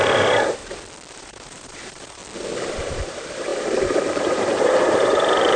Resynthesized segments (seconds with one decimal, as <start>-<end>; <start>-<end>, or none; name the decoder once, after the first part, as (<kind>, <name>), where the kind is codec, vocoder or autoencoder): 0.0-0.6 (vocoder, BigVGAN v2); 1.1-2.2; 2.7-5.6